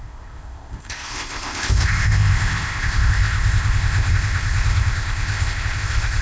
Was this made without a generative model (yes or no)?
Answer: no